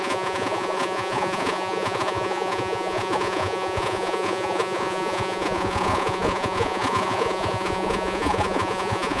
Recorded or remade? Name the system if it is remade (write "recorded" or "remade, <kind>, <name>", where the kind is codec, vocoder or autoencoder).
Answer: remade, vocoder, Vocos